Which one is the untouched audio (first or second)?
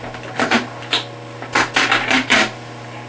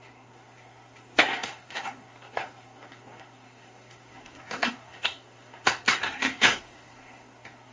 first